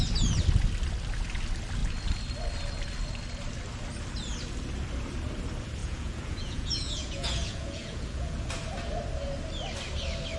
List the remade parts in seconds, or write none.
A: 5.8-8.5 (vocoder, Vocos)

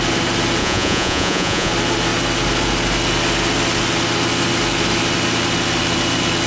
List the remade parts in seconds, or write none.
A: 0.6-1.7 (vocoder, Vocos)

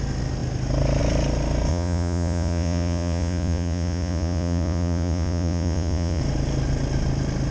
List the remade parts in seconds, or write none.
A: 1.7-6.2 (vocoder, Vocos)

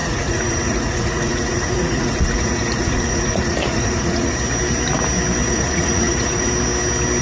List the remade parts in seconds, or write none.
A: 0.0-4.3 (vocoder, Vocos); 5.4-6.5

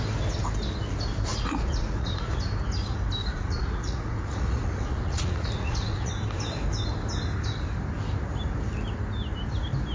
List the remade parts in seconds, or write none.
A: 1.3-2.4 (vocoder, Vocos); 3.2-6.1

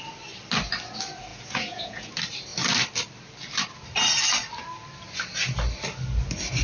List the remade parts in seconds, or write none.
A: 1.3-2.1 (vocoder, Vocos)

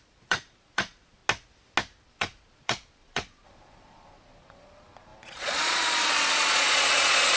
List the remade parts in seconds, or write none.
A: 0.0-1.2 (vocoder, Vocos); 2.1-7.4